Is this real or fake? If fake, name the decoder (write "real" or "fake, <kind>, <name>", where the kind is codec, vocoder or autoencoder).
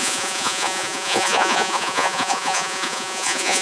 fake, vocoder, Vocos